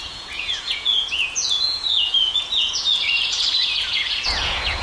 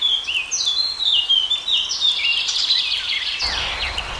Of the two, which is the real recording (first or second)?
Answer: second